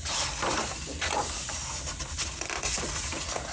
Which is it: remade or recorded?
recorded